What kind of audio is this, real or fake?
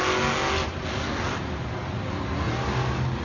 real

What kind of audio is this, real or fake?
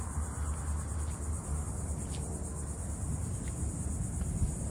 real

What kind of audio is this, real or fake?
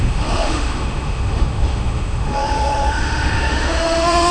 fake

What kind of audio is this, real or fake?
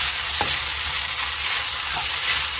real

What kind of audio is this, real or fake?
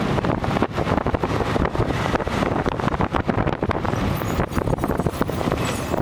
fake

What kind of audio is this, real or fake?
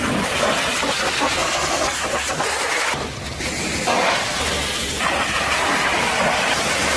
real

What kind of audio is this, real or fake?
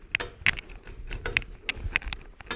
real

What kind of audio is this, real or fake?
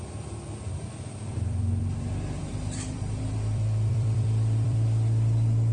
fake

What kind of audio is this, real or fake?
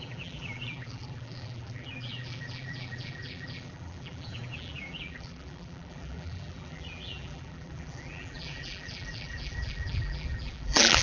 fake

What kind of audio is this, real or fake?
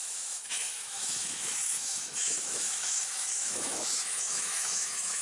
fake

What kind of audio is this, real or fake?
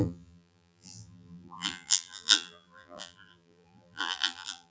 fake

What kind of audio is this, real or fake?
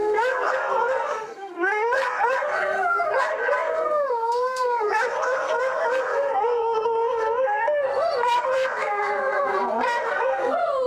fake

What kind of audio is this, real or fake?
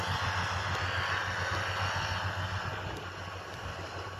real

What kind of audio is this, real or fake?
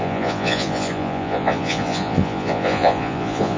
fake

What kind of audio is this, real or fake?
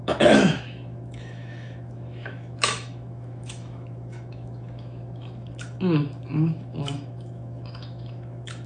fake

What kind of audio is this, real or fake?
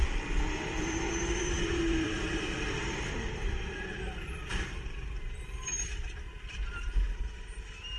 fake